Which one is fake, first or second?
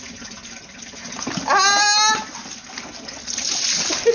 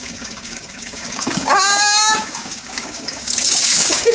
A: second